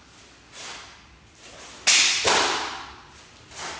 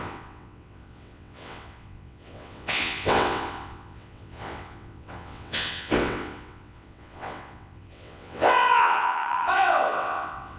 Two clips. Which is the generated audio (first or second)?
second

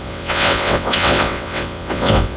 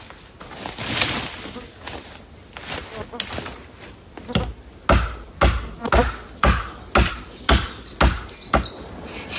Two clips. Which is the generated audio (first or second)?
first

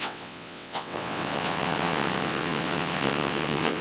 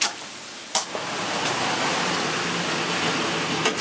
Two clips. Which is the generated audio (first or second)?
first